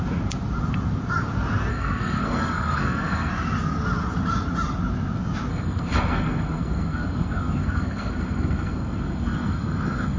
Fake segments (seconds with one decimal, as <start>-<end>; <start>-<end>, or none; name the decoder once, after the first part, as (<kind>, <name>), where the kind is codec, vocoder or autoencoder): 1.7-3.3 (codec, SNAC); 5.5-10.2